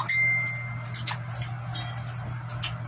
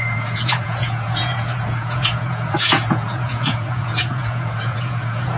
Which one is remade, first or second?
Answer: second